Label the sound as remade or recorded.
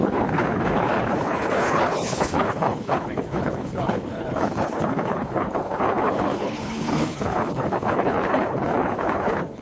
remade